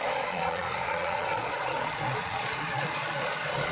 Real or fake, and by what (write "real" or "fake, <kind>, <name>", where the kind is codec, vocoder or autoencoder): fake, vocoder, Vocos